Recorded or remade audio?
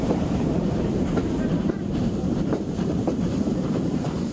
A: remade